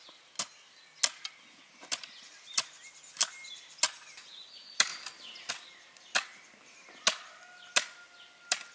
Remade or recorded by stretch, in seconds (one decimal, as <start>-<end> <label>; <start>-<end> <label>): 0.0-8.7 recorded

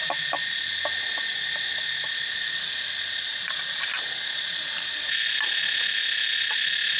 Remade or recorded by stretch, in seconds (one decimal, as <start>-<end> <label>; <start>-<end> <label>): 0.0-7.0 recorded

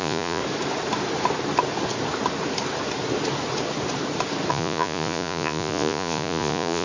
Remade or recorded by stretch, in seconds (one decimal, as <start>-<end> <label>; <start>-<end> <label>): 0.0-0.4 remade; 0.4-4.5 recorded; 4.5-6.8 remade

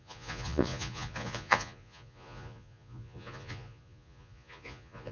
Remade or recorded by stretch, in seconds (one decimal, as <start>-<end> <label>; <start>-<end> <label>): 0.0-5.1 remade

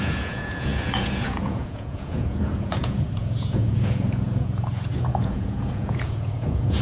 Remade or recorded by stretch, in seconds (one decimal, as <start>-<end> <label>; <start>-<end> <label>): 0.0-6.8 remade

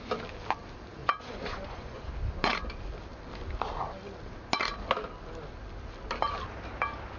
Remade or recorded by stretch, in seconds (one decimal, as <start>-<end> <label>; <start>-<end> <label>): 0.0-1.0 recorded; 1.0-2.1 remade; 2.1-7.2 recorded

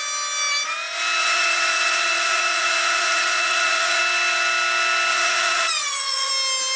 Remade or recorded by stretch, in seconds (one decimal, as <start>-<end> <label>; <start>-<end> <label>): 0.0-1.2 recorded; 1.2-4.0 remade; 4.0-5.1 recorded; 5.1-6.3 remade; 6.3-6.8 recorded